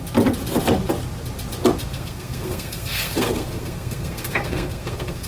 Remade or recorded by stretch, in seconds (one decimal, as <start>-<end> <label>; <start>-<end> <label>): 0.0-1.8 recorded; 1.8-5.3 remade